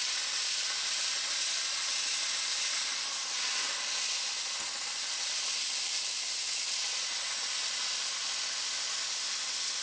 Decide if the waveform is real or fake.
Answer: real